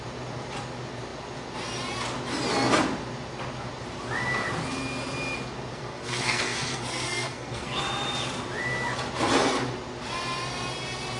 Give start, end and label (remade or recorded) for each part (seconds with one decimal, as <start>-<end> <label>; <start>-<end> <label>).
0.0-5.7 recorded; 5.7-7.8 remade; 7.8-11.2 recorded